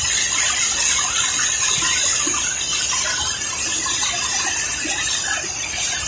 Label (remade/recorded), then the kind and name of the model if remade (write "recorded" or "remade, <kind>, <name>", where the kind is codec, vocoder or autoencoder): recorded